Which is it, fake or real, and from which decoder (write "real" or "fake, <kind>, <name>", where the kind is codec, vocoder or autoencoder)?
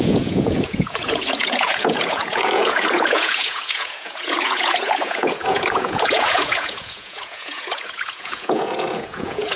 fake, vocoder, Vocos